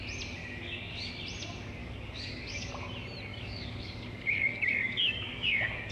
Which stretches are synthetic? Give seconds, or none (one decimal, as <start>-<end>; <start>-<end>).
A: 0.4-1.1; 1.8-2.7; 3.3-5.9